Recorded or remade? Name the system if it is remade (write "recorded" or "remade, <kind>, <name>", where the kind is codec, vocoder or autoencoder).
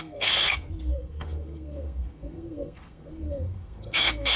remade, codec, SNAC